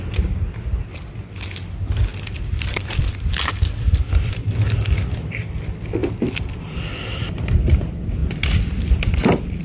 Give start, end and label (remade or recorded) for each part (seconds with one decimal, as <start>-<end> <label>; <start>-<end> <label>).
0.0-2.1 recorded; 2.1-5.3 remade; 5.3-9.6 recorded

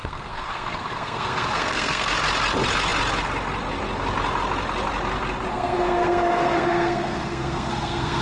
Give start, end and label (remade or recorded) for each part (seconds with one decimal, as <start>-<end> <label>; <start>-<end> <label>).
0.0-2.1 remade; 2.1-5.5 recorded; 5.5-8.2 remade

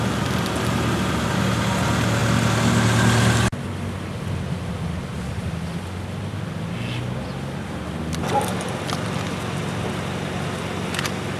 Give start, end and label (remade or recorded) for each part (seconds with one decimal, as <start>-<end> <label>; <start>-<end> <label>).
0.0-11.4 recorded

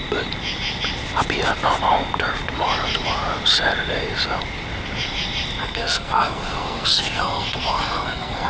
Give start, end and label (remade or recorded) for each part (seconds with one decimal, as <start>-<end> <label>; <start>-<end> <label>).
0.0-5.6 recorded; 5.6-8.5 remade

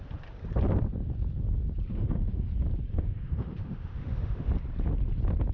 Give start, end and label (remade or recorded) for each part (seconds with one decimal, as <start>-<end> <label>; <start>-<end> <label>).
0.0-1.9 recorded; 1.9-2.5 remade; 2.5-2.9 recorded; 2.9-4.5 remade; 4.5-5.5 recorded

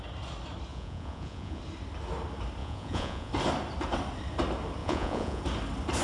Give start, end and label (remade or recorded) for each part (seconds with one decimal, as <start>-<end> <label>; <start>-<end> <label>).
0.0-0.7 recorded; 0.7-1.6 remade; 1.6-2.6 recorded; 2.6-3.3 remade; 3.3-4.8 recorded; 4.8-5.4 remade; 5.4-6.0 recorded

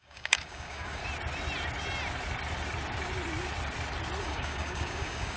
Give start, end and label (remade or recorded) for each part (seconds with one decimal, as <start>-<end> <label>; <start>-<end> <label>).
0.0-1.0 remade; 1.0-4.2 recorded; 4.2-5.4 remade

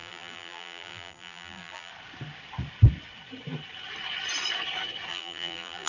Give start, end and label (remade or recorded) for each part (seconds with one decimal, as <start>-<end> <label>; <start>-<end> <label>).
0.0-1.9 remade; 1.9-5.1 recorded; 5.1-5.9 remade